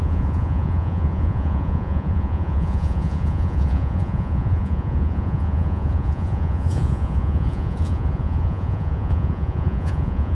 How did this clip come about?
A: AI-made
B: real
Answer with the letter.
A